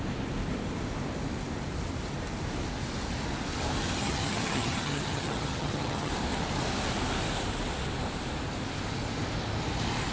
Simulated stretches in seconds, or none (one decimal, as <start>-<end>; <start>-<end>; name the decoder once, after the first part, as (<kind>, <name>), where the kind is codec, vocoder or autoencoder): 4.0-6.1 (vocoder, HiFi-GAN)

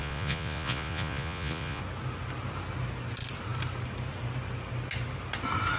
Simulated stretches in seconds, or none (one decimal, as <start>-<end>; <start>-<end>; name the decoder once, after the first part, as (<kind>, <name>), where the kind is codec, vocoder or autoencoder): 0.0-1.8 (vocoder, Vocos)